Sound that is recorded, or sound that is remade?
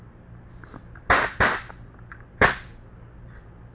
recorded